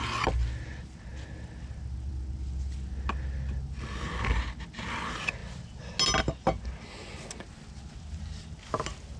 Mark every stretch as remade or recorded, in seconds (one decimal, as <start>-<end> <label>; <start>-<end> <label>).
0.0-9.2 recorded